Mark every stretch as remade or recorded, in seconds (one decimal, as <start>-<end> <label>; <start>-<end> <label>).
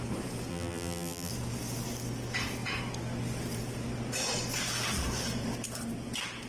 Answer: 0.0-0.5 recorded; 0.5-1.3 remade; 1.3-6.5 recorded